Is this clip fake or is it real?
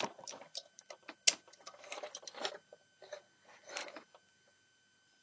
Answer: real